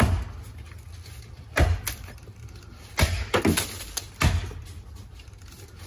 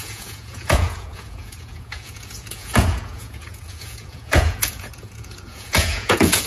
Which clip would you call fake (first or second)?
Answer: second